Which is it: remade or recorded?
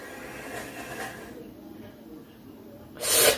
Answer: recorded